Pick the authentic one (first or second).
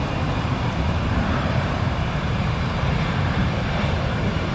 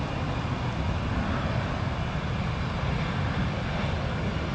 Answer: second